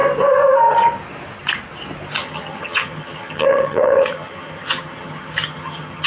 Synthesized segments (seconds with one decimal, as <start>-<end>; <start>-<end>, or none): 2.2-6.1